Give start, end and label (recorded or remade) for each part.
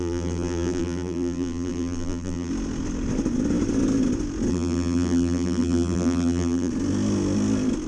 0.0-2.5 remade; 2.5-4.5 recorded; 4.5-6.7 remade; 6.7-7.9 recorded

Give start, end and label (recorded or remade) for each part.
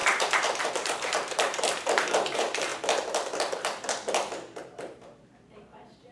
0.0-2.7 remade; 2.7-4.6 recorded; 4.6-6.1 remade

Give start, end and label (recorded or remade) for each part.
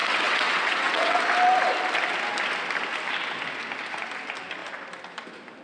0.0-1.2 remade; 1.2-5.6 recorded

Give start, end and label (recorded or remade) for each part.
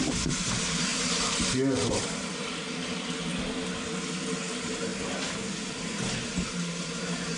0.0-3.3 remade; 3.3-4.5 recorded; 4.5-4.9 remade; 4.9-5.7 recorded; 5.7-7.4 remade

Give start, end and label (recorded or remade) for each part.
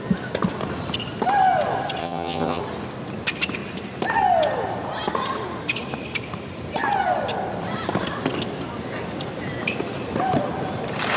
0.0-2.0 recorded; 2.0-2.6 remade; 2.6-11.2 recorded